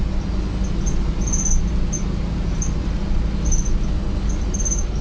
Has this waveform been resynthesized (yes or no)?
no